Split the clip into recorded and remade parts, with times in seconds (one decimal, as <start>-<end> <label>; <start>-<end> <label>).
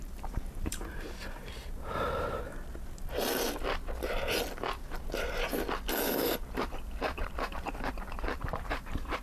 0.0-2.5 remade; 2.5-6.5 recorded; 6.5-9.2 remade